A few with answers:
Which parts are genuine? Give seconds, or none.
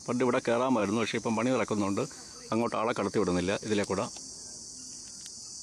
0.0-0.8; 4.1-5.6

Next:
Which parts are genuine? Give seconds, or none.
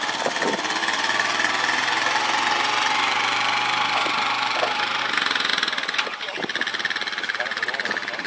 0.0-8.3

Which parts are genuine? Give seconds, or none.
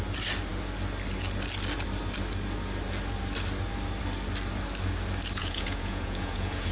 0.0-5.4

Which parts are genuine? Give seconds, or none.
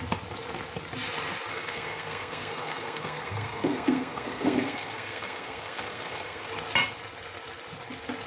0.0-1.5; 6.5-8.3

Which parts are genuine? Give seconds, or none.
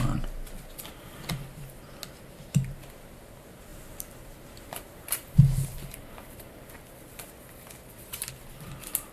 0.0-3.7; 6.7-9.1